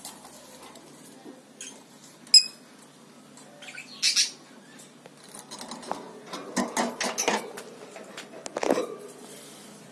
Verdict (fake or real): real